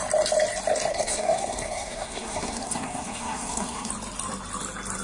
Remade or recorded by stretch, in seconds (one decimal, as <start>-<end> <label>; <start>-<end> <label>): 0.0-0.9 recorded; 0.9-3.9 remade; 3.9-5.0 recorded